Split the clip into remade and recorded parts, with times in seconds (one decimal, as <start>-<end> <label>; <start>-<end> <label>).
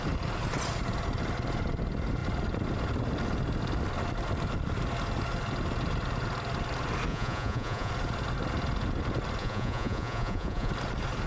0.0-7.1 recorded; 7.1-7.9 remade; 7.9-9.4 recorded; 9.4-10.7 remade; 10.7-11.3 recorded